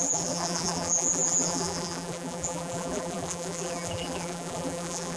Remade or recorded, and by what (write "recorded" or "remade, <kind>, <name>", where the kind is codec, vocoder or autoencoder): remade, vocoder, BigVGAN v2